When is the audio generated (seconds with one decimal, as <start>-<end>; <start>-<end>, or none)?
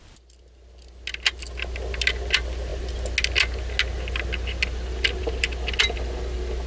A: none